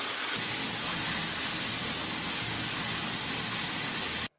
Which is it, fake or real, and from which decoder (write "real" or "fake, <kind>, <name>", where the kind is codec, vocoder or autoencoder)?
real